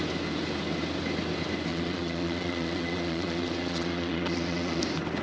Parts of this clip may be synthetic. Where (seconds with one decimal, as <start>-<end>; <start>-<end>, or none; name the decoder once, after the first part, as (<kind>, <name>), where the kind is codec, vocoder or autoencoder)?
1.7-4.8 (vocoder, Vocos)